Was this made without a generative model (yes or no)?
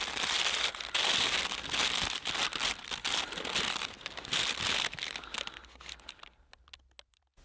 yes